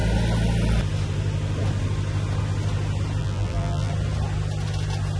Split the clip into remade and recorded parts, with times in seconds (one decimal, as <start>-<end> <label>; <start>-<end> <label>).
0.0-3.2 recorded; 3.2-3.9 remade; 3.9-5.2 recorded